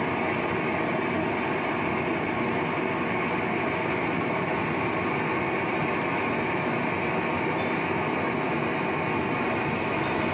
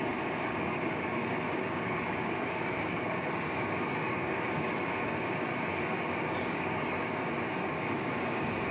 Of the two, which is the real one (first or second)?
first